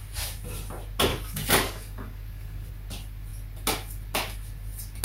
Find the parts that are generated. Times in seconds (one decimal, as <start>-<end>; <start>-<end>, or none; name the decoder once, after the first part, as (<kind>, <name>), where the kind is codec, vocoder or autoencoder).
1.1-2.7 (codec, DAC)